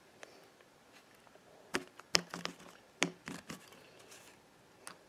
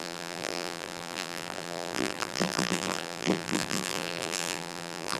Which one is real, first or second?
first